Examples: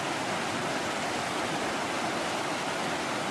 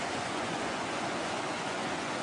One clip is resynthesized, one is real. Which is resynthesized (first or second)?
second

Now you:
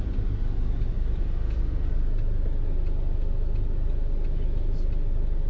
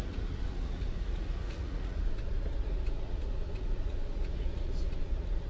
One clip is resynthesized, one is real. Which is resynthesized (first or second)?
second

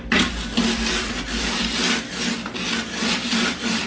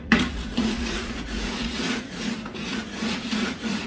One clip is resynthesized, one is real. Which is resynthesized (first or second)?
second